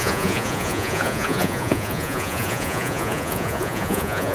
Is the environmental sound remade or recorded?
remade